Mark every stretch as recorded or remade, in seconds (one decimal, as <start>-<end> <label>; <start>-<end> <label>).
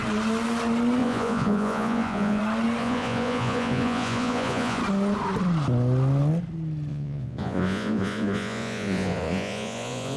0.0-1.0 recorded; 1.0-2.4 remade; 2.4-2.8 recorded; 2.8-4.8 remade; 4.8-6.9 recorded; 6.9-10.2 remade